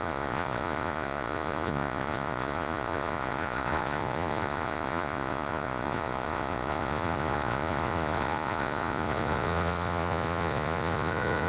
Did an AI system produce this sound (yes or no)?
yes